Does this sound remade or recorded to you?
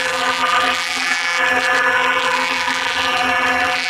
remade